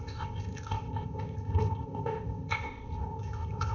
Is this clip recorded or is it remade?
remade